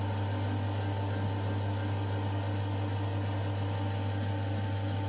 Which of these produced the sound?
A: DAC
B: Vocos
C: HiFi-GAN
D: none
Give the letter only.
D